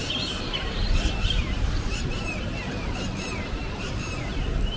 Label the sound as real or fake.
fake